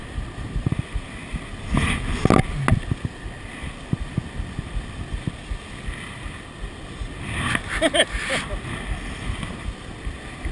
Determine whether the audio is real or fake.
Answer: real